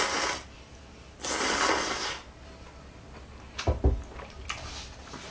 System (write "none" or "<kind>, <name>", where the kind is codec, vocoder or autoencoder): none